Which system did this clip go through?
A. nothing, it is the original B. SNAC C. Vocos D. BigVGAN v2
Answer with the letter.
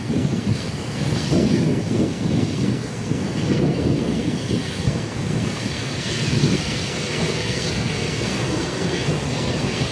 B